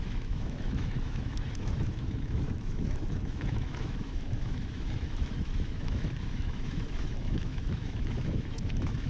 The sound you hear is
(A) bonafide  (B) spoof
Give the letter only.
B